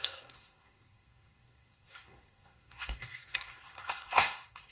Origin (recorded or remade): remade